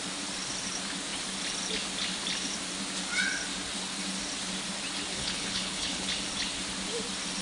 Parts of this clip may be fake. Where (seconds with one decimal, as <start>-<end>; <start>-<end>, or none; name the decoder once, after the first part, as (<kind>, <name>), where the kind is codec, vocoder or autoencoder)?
5.1-6.1 (codec, HILCodec)